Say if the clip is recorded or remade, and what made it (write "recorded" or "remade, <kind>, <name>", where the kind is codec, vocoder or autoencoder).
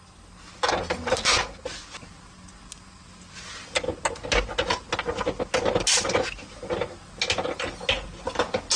recorded